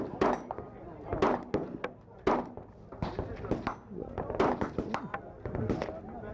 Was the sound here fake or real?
real